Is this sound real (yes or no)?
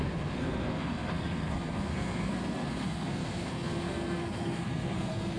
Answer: no